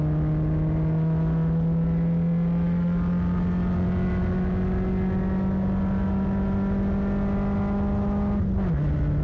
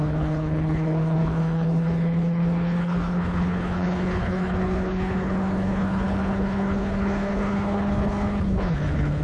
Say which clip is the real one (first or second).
first